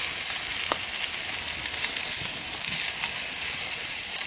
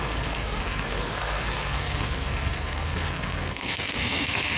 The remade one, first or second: second